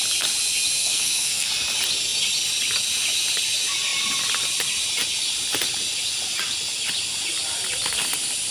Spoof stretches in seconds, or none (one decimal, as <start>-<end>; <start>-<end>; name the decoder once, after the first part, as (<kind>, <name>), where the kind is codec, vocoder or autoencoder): 0.8-1.5 (codec, SNAC)